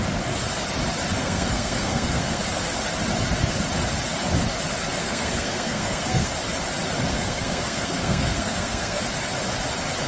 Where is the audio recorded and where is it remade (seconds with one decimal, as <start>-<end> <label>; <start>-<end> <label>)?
0.0-1.2 recorded; 1.2-2.4 remade; 2.4-5.0 recorded; 5.0-6.3 remade; 6.3-7.1 recorded; 7.1-9.0 remade; 9.0-10.1 recorded